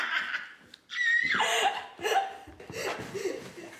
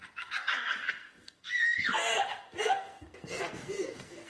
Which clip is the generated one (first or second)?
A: second